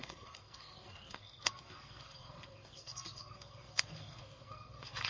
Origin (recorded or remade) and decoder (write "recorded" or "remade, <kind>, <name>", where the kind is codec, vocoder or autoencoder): remade, codec, SNAC